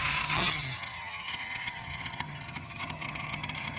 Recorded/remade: remade